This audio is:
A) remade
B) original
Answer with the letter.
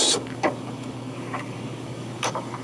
A